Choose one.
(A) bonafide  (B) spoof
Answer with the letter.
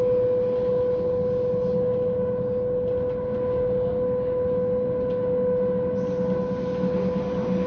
A